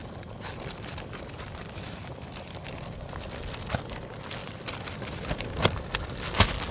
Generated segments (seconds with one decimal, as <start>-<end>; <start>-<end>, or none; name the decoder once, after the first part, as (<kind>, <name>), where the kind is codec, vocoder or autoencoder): 0.0-4.0 (vocoder, BigVGAN v2); 4.4-5.5